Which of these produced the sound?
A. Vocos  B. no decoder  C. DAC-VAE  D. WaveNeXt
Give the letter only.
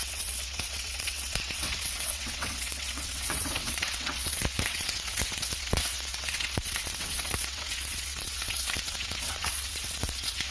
D